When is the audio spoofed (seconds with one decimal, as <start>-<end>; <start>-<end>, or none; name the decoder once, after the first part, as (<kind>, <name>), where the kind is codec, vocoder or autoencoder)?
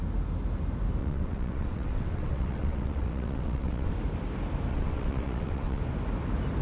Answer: 1.0-3.9 (vocoder, WaveNeXt); 4.7-5.8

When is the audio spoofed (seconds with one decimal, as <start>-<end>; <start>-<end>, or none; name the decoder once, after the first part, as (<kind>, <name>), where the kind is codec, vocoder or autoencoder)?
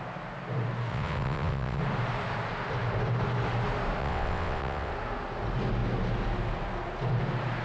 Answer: 0.9-1.8 (vocoder, WaveNeXt); 4.0-4.9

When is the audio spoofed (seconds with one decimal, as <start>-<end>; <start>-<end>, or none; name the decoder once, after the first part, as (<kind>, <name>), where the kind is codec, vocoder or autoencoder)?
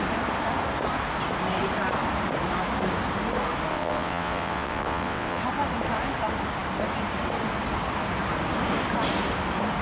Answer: 3.7-5.4 (vocoder, WaveNeXt)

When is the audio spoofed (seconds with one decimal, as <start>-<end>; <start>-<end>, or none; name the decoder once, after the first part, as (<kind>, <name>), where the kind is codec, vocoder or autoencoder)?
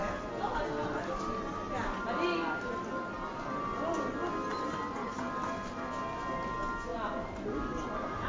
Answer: none